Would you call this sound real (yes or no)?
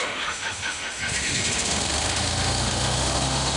no